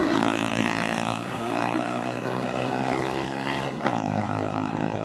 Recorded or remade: remade